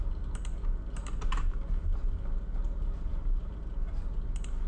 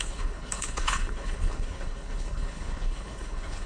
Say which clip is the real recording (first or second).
first